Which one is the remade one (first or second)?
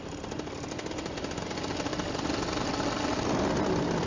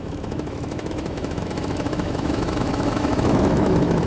second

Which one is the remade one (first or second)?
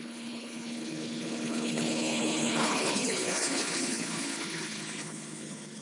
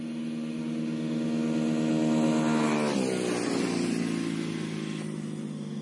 first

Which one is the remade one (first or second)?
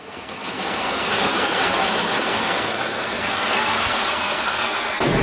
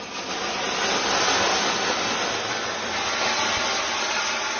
first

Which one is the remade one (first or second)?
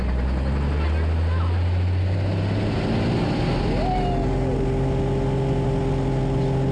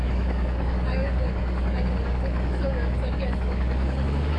second